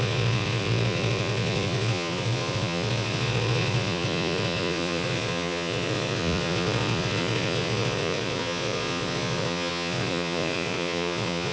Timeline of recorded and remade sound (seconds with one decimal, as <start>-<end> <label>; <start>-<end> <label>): 0.0-11.5 remade